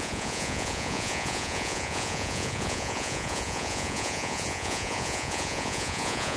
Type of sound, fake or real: fake